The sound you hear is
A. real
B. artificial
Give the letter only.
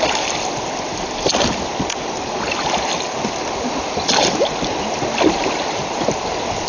A